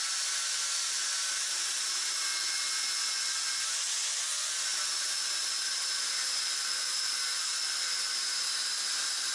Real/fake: real